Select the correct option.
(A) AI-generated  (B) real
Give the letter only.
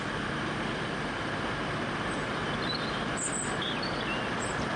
B